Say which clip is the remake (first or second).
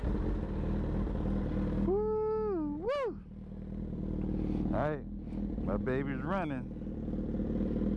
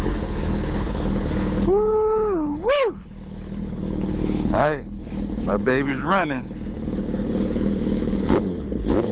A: second